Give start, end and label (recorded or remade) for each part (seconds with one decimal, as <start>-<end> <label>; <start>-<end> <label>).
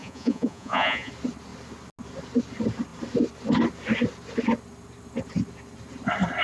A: 0.0-1.1 remade; 1.1-6.4 recorded